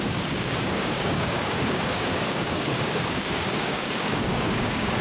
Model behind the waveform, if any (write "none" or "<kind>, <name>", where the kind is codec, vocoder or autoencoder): codec, DAC